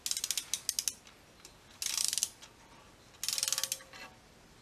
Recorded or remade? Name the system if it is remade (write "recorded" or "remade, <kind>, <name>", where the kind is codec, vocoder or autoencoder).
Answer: recorded